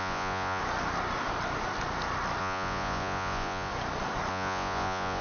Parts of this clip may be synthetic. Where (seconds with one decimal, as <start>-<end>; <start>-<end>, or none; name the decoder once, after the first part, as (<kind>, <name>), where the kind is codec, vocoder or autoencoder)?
0.0-0.6 (vocoder, Vocos); 2.4-3.7; 4.3-5.2